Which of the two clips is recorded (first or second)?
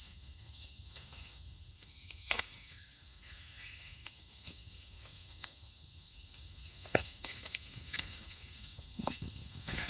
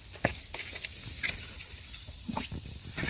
second